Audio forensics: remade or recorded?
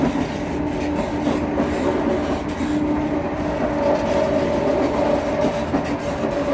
recorded